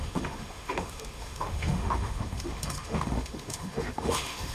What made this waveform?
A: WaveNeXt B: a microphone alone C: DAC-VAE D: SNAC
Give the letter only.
C